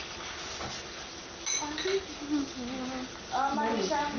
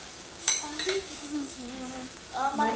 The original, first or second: first